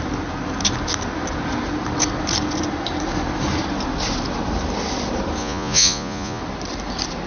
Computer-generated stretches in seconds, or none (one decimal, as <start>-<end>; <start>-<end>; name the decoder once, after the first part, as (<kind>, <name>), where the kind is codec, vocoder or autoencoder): 5.4-6.4 (vocoder, Vocos)